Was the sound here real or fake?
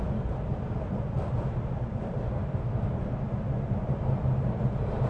real